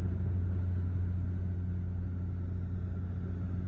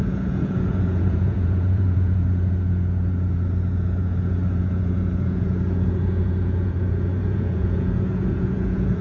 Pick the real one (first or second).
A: first